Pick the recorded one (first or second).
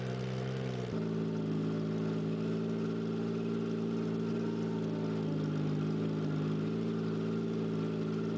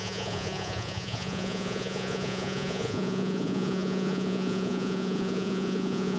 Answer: first